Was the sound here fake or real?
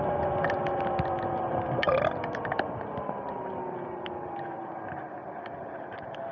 real